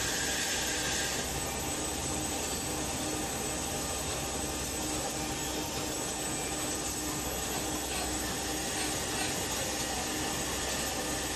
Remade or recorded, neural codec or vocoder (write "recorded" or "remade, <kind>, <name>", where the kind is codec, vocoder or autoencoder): recorded